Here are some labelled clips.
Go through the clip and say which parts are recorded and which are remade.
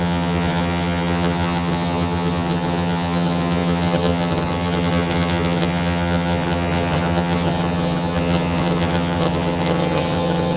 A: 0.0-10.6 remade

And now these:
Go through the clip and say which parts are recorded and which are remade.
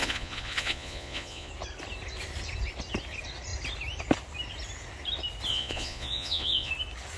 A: 0.0-1.5 remade; 1.5-5.5 recorded; 5.5-6.7 remade; 6.7-7.2 recorded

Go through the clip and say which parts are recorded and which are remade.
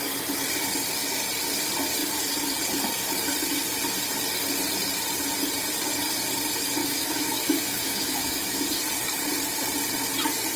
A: 0.0-6.8 recorded; 6.8-8.8 remade; 8.8-10.6 recorded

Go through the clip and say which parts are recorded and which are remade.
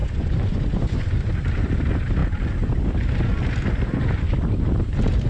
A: 0.0-1.3 remade; 1.3-5.3 recorded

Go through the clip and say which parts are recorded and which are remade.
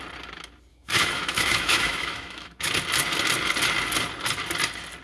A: 0.0-0.7 recorded; 0.7-2.7 remade; 2.7-5.0 recorded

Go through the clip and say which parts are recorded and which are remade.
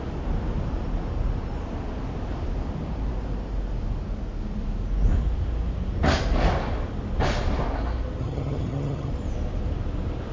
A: 0.0-8.2 recorded; 8.2-9.1 remade; 9.1-10.3 recorded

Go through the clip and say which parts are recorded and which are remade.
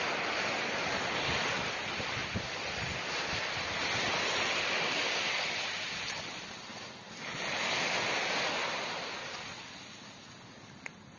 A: 0.0-11.2 recorded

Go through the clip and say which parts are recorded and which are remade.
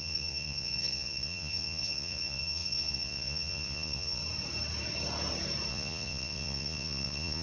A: 0.0-4.2 remade; 4.2-5.7 recorded; 5.7-7.4 remade